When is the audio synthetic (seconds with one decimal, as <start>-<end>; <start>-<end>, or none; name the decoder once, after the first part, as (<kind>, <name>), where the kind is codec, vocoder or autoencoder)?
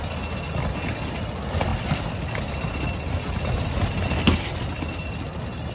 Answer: none